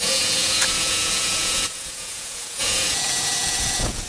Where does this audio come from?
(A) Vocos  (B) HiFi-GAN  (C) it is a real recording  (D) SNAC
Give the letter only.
A